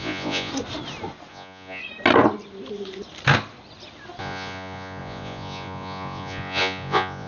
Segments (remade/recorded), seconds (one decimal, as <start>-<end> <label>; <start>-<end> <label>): 0.0-0.5 remade; 0.5-1.3 recorded; 1.3-1.8 remade; 1.8-4.2 recorded; 4.2-7.3 remade